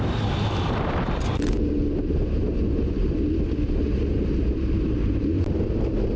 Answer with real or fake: real